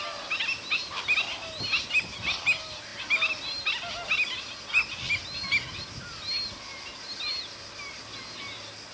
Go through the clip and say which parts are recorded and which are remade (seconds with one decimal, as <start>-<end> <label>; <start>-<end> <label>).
0.0-8.9 recorded